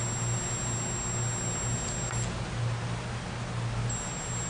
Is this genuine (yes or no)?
yes